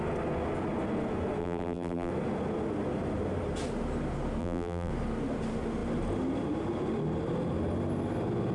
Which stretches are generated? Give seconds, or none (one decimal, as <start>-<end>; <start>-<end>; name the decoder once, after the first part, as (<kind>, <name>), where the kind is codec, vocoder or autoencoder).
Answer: 1.4-2.1 (vocoder, BigVGAN v2); 4.4-4.9